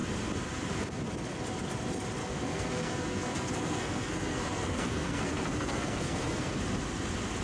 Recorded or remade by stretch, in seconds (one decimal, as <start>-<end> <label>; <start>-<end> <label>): 0.0-2.2 recorded; 2.2-6.6 remade; 6.6-7.4 recorded